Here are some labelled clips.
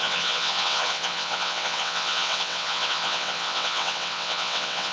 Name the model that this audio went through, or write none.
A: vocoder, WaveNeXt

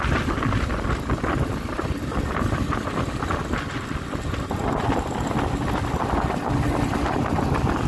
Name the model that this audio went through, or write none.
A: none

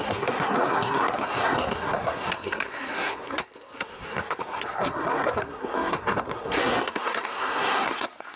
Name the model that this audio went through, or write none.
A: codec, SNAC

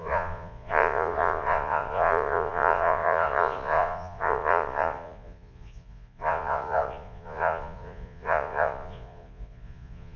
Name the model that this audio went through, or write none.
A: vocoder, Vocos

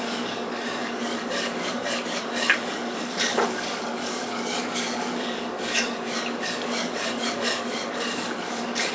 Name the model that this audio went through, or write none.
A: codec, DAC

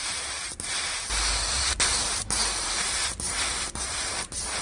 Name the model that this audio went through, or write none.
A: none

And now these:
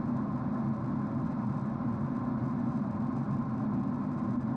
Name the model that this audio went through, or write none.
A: none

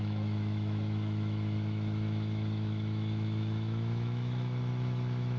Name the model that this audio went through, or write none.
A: autoencoder, DAC-VAE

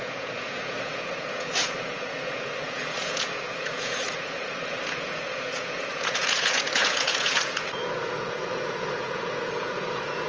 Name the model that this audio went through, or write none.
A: vocoder, Vocos